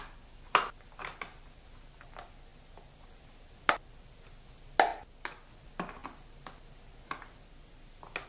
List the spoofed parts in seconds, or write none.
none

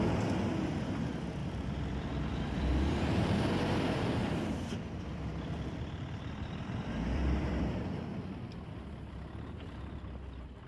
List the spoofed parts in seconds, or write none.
1.4-3.8 (vocoder, BigVGAN v2); 4.2-8.0

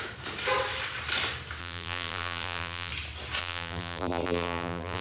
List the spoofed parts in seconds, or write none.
1.6-2.9 (vocoder, BigVGAN v2); 3.4-5.0

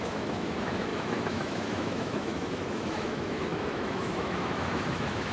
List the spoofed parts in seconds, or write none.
0.0-5.3 (autoencoder, DAC-VAE)

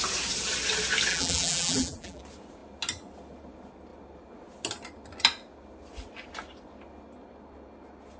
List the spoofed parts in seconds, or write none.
1.1-2.2 (vocoder, BigVGAN v2)